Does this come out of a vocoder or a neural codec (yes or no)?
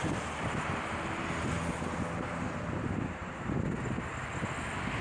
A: no